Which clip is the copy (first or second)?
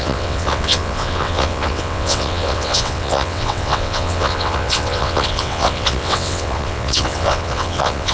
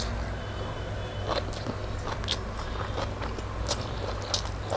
first